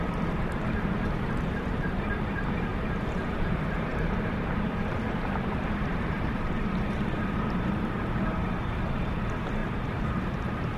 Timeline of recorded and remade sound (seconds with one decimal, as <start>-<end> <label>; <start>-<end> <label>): 0.0-10.8 remade

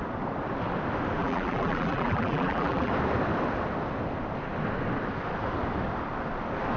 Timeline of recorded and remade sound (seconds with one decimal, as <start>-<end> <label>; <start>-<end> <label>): 0.0-1.2 recorded; 1.2-2.9 remade; 2.9-6.8 recorded

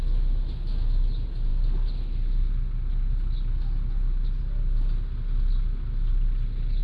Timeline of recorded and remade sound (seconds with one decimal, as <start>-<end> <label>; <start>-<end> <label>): 0.0-6.8 recorded